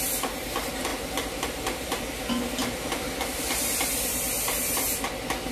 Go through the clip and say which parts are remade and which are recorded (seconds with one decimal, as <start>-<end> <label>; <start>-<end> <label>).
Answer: 0.0-0.9 recorded; 0.9-2.0 remade; 2.0-5.5 recorded